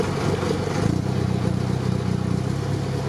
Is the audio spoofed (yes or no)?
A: no